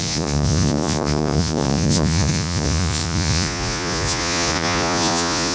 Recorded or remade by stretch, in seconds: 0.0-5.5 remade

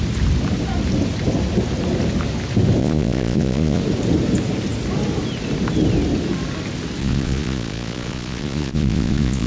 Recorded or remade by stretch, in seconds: 0.0-2.8 recorded; 2.8-3.8 remade; 3.8-7.0 recorded; 7.0-9.5 remade

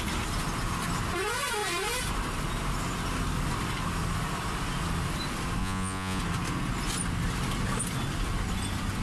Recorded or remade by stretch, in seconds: 0.0-5.6 recorded; 5.6-6.2 remade; 6.2-9.0 recorded

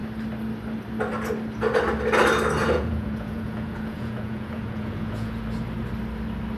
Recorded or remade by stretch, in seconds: 0.0-2.6 recorded; 2.6-5.4 remade; 5.4-6.6 recorded

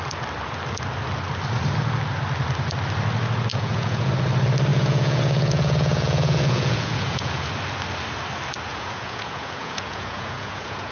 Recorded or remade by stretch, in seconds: 0.0-3.5 recorded; 3.5-4.1 remade; 4.1-4.7 recorded; 4.7-7.5 remade; 7.5-8.7 recorded; 8.7-10.9 remade

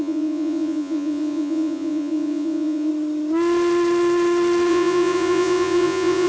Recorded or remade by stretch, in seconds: 0.0-2.9 remade; 2.9-4.7 recorded; 4.7-6.3 remade

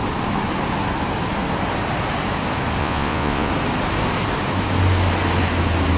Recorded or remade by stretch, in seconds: 0.0-2.8 recorded; 2.8-3.5 remade; 3.5-6.0 recorded

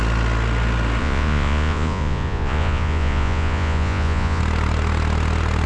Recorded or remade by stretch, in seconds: 0.0-1.0 recorded; 1.0-4.4 remade; 4.4-5.7 recorded